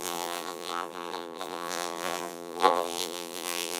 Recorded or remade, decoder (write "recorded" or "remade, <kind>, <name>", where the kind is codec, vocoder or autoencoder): remade, vocoder, BigVGAN v2